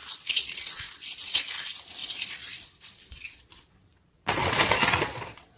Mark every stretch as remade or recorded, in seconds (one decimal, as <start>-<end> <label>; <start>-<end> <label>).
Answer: 0.0-1.4 remade; 1.4-2.0 recorded; 2.0-5.6 remade